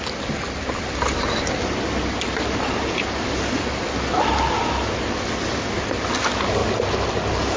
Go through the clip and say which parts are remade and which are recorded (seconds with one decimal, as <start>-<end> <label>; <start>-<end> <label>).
0.0-7.6 recorded